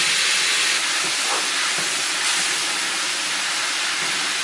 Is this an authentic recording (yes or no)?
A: yes